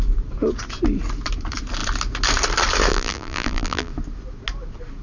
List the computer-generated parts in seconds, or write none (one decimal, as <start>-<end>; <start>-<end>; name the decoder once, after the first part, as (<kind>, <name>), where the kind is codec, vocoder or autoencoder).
2.9-3.9 (vocoder, BigVGAN v2)